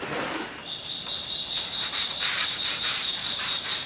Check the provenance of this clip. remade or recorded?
remade